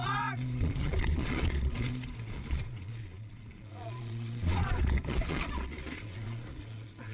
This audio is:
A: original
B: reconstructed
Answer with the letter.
B